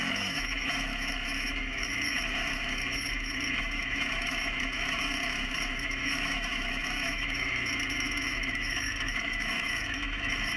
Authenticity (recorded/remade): remade